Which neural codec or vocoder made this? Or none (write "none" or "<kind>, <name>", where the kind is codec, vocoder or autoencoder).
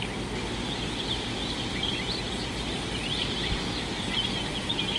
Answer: none